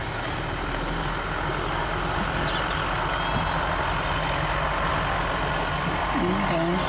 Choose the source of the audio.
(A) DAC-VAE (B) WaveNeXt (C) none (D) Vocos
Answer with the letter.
C